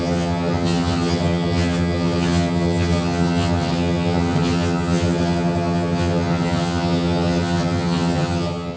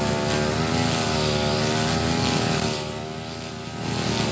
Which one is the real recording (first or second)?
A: second